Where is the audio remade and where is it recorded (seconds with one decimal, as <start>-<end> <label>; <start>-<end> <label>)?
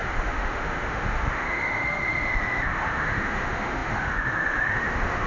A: 0.0-5.3 remade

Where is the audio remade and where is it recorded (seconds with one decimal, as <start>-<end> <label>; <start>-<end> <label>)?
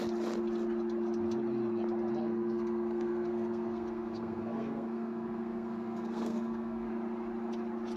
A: 0.0-2.2 recorded; 2.2-6.9 remade; 6.9-8.0 recorded